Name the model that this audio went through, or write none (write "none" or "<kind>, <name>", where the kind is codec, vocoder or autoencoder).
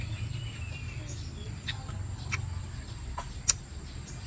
none